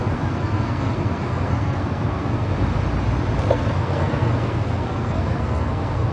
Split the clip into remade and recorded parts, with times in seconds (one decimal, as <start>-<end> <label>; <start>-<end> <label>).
0.0-2.5 remade; 2.5-3.5 recorded; 3.5-6.1 remade